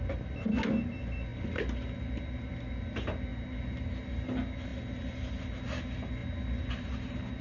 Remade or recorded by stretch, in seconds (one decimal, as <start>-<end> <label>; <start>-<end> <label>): 0.0-7.4 recorded